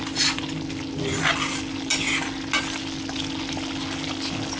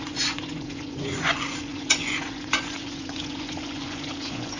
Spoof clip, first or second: second